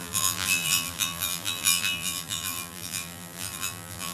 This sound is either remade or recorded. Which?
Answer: remade